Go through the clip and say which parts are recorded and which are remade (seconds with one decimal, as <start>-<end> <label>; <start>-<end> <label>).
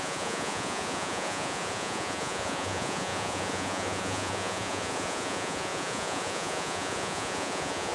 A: 0.0-7.9 remade